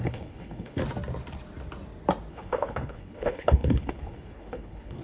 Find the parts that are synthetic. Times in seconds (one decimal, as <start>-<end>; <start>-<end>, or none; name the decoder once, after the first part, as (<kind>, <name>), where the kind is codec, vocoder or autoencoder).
0.0-0.8 (codec, HILCodec); 2.3-5.0